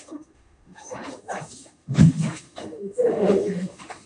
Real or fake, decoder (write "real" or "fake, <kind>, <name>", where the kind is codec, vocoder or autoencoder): fake, autoencoder, DAC-VAE